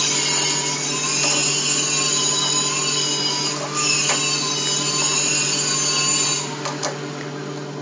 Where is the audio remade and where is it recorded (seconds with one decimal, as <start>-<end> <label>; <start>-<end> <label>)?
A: 0.0-7.8 recorded